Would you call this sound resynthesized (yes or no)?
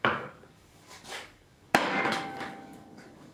yes